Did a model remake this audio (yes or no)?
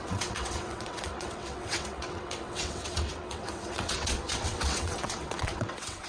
yes